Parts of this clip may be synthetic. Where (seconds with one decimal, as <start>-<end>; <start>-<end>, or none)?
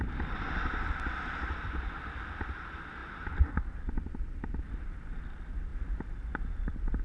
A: none